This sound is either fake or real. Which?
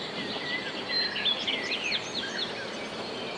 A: real